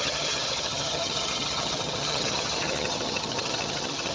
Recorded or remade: remade